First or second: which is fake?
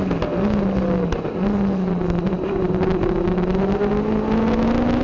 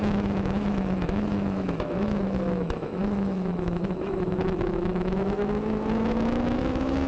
second